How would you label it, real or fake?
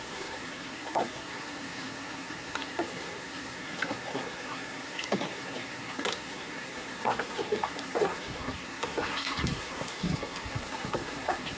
fake